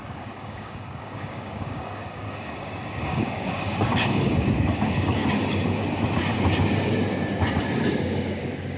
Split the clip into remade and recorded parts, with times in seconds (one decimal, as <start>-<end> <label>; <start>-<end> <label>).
0.0-5.2 remade; 5.2-8.0 recorded; 8.0-8.8 remade